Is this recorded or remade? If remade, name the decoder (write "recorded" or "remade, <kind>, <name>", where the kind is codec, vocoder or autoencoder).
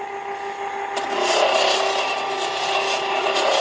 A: recorded